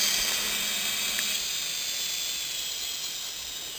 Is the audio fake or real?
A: real